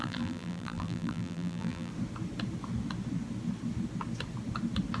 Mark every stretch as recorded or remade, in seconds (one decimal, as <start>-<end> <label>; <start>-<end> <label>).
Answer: 0.0-1.9 remade; 1.9-5.0 recorded